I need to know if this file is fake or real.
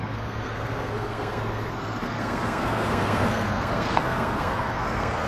fake